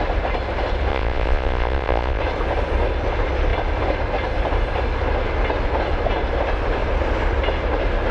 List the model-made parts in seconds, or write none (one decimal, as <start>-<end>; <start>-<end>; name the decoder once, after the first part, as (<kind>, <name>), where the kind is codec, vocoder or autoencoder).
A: 0.9-2.2 (vocoder, Vocos)